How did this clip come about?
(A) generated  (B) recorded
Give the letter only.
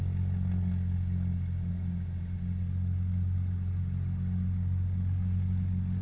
B